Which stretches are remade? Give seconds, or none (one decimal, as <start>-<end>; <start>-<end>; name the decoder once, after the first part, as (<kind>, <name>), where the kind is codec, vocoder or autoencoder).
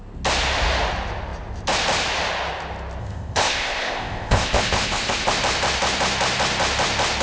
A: 3.0-5.3 (codec, ZipCodec)